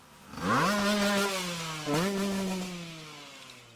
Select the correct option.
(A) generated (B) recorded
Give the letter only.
B